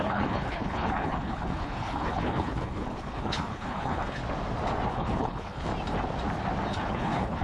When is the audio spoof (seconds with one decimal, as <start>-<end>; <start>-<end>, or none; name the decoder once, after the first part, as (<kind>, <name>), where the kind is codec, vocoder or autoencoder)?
0.0-4.2 (codec, HILCodec); 4.9-5.7; 6.7-7.4